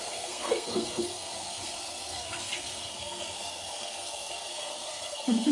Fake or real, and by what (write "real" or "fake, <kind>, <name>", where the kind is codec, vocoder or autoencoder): fake, codec, SNAC